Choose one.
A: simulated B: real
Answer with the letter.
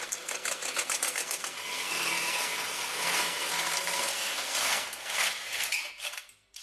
A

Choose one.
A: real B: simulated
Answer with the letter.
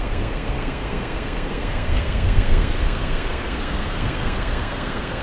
B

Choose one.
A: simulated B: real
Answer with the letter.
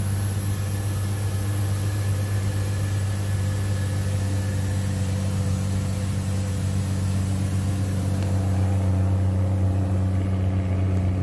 B